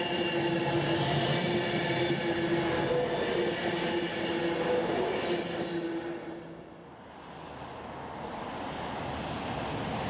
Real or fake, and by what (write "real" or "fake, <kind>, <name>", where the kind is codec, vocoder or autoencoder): real